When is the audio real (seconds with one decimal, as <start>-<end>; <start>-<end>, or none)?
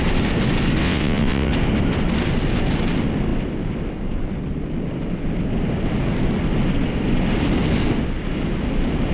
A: 0.0-0.8; 1.5-9.1